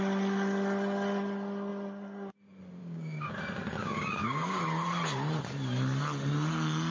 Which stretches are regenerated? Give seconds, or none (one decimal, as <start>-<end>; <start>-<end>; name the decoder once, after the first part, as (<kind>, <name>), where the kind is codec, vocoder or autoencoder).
2.8-3.3 (codec, DAC); 3.8-4.6

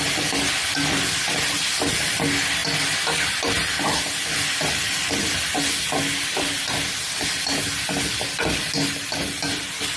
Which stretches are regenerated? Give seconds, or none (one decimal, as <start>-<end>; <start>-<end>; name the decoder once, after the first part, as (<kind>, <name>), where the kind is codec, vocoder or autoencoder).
none

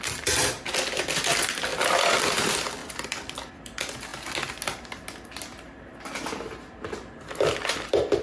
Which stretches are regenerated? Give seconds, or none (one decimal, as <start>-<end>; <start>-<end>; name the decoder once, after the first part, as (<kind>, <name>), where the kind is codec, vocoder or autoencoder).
0.0-1.7 (vocoder, BigVGAN v2); 2.2-2.8; 3.5-4.1; 7.7-8.2

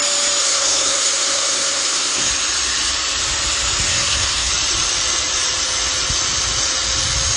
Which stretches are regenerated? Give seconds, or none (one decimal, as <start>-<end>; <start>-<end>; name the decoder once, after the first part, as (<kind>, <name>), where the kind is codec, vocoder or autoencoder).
0.4-2.3 (codec, SNAC); 3.9-4.5